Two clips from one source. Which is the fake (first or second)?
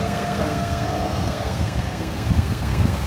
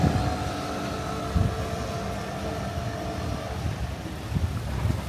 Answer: first